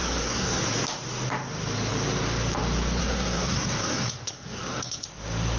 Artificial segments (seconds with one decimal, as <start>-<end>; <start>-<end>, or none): 0.0-0.6; 3.0-5.1